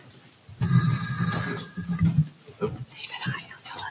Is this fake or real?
real